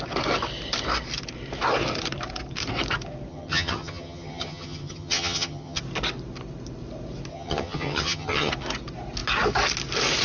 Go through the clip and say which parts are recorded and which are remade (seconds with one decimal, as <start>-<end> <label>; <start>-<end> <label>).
0.0-3.3 recorded; 3.3-5.8 remade; 5.8-7.3 recorded; 7.3-8.5 remade; 8.5-10.2 recorded